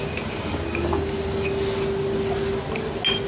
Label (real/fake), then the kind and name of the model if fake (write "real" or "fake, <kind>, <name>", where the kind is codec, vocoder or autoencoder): real